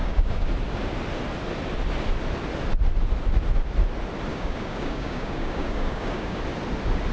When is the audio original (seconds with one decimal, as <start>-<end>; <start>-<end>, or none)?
0.5-4.3; 6.4-7.1